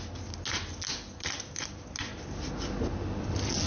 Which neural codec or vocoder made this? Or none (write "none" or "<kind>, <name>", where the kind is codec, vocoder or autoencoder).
none